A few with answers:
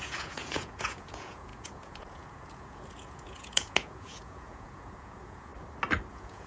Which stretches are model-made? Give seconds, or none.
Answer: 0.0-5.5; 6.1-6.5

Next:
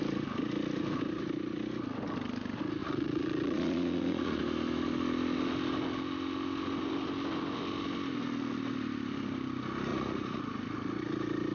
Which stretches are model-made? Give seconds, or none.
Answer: 2.8-4.4; 9.9-10.4

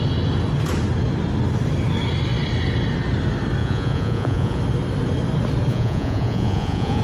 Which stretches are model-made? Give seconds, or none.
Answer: 3.6-4.6; 5.7-7.0